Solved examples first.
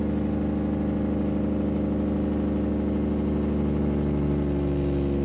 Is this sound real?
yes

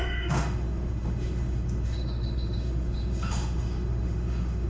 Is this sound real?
no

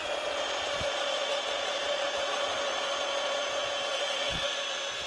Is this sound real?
no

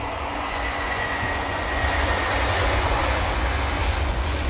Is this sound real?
no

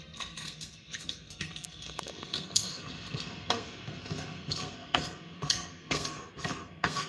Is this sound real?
no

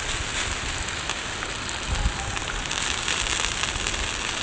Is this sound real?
yes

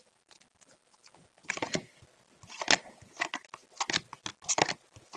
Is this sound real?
yes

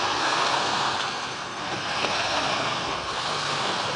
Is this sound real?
no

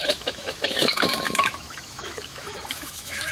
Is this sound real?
no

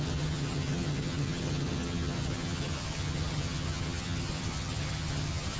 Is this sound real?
no